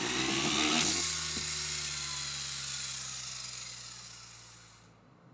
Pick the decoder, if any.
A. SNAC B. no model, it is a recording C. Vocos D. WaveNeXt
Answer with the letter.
B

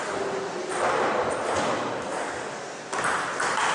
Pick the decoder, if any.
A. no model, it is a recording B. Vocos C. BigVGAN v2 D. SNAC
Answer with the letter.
A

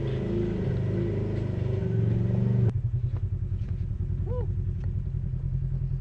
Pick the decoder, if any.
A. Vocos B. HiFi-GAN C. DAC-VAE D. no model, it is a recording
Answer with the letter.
D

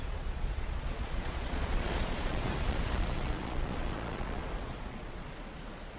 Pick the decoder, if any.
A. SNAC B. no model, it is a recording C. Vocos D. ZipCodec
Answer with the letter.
C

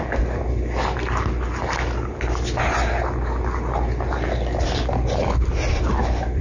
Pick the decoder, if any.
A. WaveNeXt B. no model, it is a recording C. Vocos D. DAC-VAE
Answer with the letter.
B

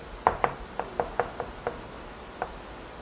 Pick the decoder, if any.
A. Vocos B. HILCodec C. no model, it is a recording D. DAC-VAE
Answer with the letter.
C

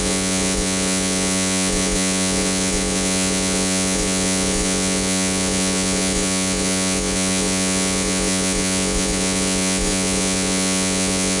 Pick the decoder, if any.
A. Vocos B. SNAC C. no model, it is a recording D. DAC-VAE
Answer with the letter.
A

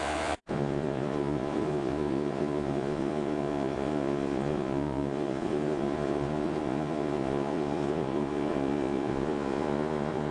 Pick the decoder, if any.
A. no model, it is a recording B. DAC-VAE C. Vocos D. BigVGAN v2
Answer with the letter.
C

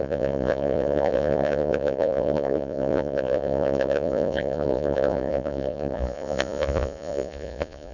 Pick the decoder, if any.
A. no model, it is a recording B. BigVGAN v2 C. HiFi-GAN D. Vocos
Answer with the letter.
D